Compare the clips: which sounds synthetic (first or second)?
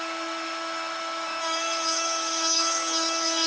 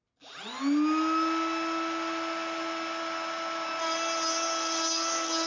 first